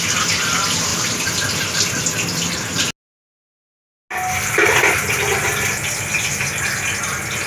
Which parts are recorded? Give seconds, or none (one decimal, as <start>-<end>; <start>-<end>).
0.0-7.5